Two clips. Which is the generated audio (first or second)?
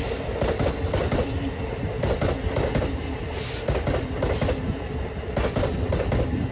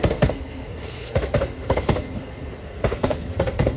second